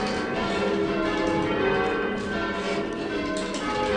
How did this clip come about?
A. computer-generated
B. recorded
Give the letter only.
B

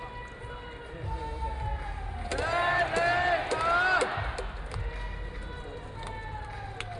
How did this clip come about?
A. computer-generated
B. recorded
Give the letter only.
B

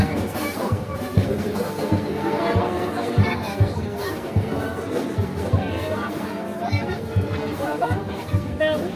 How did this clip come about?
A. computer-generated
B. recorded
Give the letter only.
A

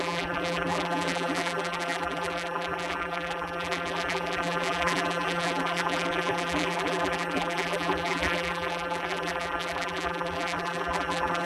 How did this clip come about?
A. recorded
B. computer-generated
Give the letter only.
B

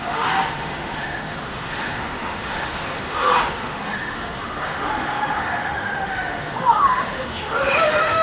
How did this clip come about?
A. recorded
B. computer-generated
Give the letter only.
B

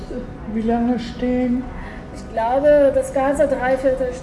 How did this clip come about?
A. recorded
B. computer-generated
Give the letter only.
A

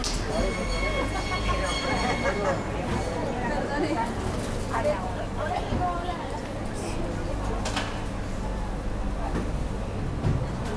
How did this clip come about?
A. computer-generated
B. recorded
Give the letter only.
B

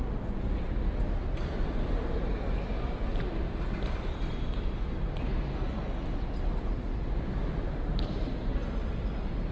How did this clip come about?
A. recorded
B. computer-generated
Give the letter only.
A